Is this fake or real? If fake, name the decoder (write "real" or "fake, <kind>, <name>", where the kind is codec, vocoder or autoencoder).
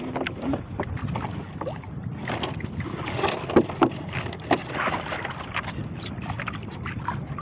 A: real